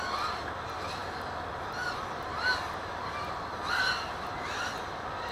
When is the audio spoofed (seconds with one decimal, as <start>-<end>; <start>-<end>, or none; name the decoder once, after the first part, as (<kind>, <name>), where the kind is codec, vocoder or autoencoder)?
none